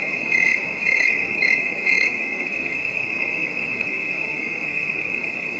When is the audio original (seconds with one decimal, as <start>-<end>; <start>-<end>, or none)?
none